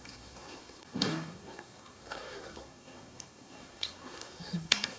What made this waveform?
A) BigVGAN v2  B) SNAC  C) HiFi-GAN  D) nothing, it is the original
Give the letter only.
B